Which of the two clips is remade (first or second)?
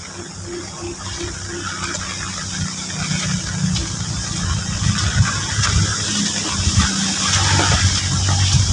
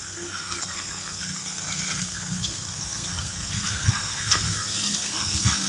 second